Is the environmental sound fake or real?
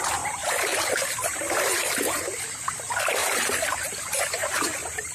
fake